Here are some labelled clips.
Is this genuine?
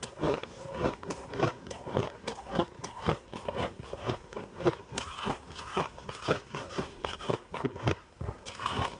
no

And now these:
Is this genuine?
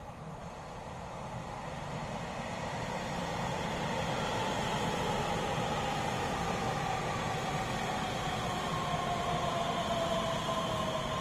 yes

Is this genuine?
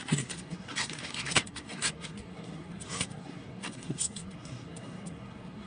no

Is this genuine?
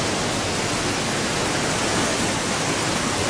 yes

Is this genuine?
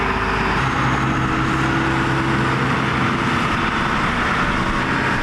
yes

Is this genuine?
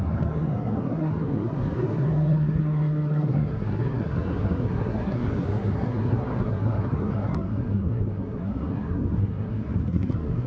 no